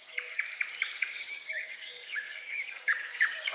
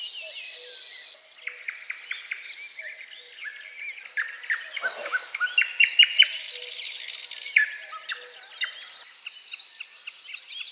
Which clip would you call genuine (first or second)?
second